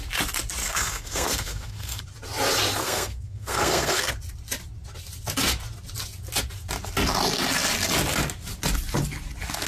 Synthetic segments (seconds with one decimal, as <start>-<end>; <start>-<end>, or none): 0.6-2.0; 2.8-4.1